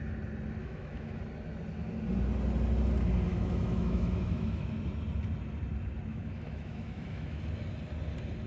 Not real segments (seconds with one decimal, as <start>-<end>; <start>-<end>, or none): 0.6-1.2; 3.3-4.8; 6.1-7.4